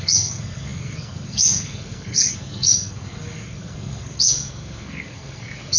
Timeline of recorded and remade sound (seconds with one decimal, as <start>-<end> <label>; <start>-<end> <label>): 0.0-5.8 remade